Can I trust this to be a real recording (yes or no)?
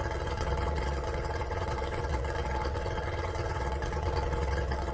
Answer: no